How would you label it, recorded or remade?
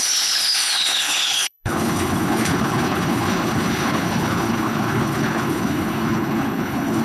remade